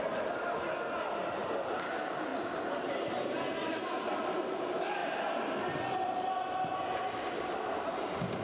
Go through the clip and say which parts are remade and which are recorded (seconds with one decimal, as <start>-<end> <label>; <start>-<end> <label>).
0.0-8.4 recorded